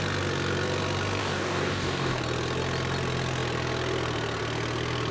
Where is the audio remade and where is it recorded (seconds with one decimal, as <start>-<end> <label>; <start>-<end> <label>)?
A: 0.0-1.2 recorded; 1.2-2.2 remade; 2.2-5.1 recorded